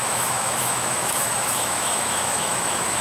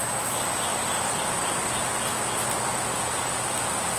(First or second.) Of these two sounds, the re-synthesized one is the first